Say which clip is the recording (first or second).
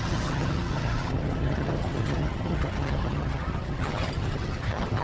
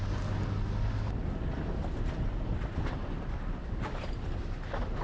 second